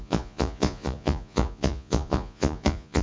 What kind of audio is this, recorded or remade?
remade